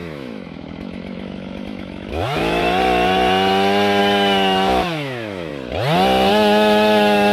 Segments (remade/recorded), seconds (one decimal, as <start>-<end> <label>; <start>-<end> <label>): 0.0-2.6 remade; 2.6-4.0 recorded; 4.0-5.5 remade; 5.5-6.3 recorded; 6.3-7.3 remade